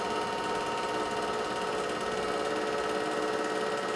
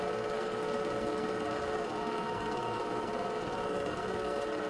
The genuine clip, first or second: first